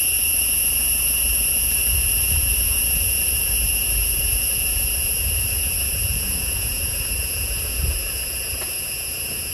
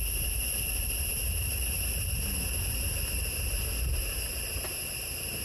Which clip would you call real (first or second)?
second